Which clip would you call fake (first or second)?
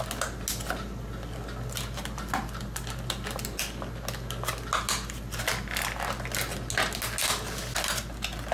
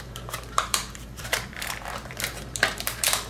second